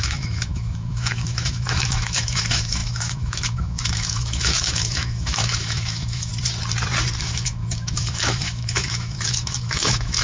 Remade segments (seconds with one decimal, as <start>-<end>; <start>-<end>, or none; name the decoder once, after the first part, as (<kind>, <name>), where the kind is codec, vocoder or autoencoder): 0.0-6.3 (autoencoder, DAC-VAE); 7.2-10.2